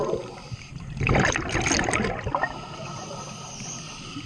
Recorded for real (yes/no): yes